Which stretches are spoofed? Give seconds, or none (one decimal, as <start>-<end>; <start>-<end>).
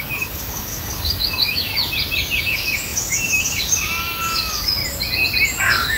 0.0-1.7; 2.4-4.8; 5.6-6.0